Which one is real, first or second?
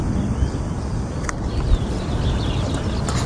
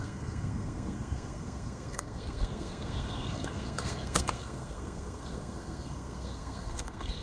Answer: first